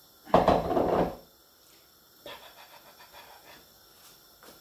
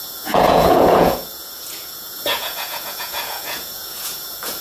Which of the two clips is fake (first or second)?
second